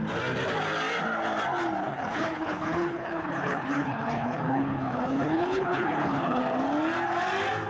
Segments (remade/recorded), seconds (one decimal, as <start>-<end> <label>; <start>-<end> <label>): 0.0-1.8 recorded; 1.8-6.4 remade; 6.4-7.7 recorded